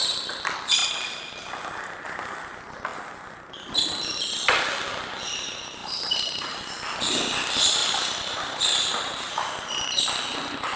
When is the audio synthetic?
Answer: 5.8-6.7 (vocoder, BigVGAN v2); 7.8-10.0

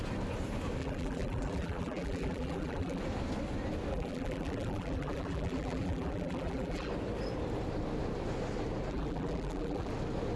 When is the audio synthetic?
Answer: 0.8-3.0 (vocoder, BigVGAN v2); 3.9-6.9; 8.9-9.9

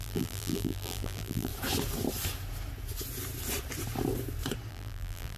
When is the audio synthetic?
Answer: 0.0-1.5 (vocoder, BigVGAN v2); 4.7-5.4